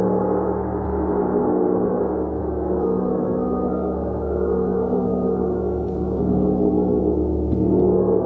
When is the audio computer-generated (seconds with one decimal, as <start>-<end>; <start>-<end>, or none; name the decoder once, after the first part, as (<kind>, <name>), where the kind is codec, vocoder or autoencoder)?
1.4-2.0 (codec, SNAC); 2.4-7.0